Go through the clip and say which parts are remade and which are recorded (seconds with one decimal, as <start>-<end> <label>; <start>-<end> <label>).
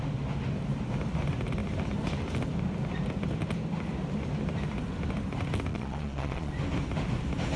0.0-5.7 recorded; 5.7-6.5 remade; 6.5-7.6 recorded